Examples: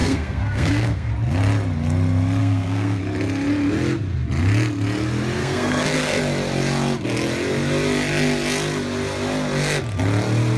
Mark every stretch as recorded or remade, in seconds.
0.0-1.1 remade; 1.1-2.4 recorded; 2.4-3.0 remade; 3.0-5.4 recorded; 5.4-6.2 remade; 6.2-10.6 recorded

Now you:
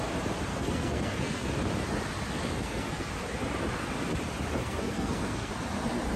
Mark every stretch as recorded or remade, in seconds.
0.0-0.5 recorded; 0.5-1.5 remade; 1.5-2.5 recorded; 2.5-3.1 remade; 3.1-4.6 recorded; 4.6-5.5 remade; 5.5-6.2 recorded

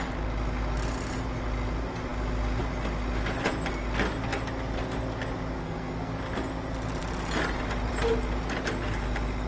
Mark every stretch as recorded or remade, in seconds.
0.0-5.6 recorded; 5.6-6.2 remade; 6.2-9.5 recorded

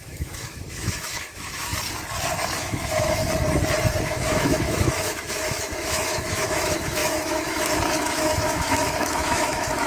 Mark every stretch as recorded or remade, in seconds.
0.0-1.7 remade; 1.7-2.4 recorded; 2.4-3.2 remade; 3.2-4.0 recorded; 4.0-9.9 remade

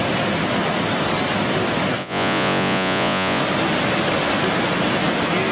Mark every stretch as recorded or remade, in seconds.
0.0-2.0 recorded; 2.0-3.4 remade; 3.4-5.5 recorded